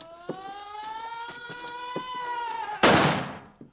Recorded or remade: recorded